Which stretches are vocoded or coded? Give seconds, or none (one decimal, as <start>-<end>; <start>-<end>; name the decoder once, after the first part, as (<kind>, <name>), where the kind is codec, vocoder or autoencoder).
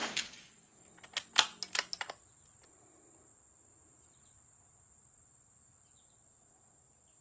0.0-0.9 (codec, DAC)